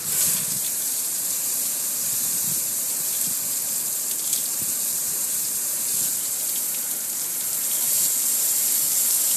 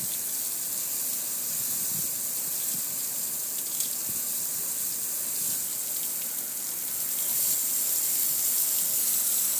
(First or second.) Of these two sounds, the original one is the second